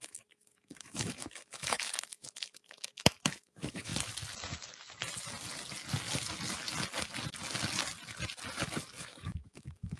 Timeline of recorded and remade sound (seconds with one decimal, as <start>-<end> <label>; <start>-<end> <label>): 0.0-3.9 remade; 3.9-9.0 recorded; 9.0-10.0 remade